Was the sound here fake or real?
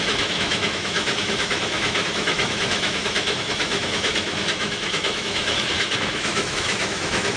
fake